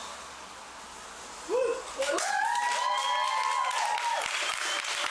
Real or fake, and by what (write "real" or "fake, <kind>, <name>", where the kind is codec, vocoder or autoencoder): real